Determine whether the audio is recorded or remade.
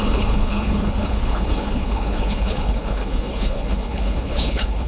remade